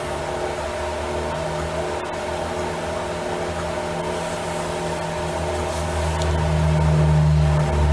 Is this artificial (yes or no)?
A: no